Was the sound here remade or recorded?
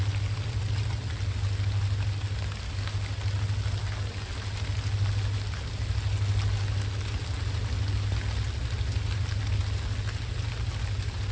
recorded